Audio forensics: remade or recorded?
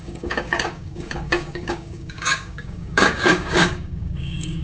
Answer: remade